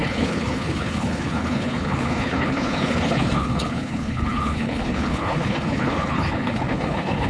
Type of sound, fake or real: fake